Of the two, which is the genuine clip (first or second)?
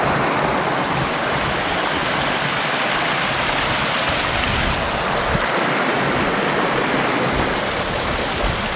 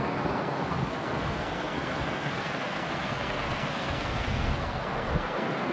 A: first